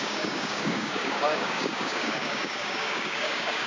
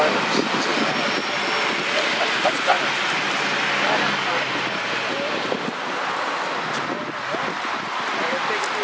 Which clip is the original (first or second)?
second